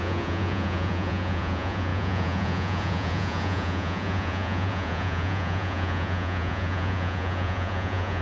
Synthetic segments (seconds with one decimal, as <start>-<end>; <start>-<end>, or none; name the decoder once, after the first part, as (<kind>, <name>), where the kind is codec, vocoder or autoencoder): 0.0-8.2 (vocoder, Vocos)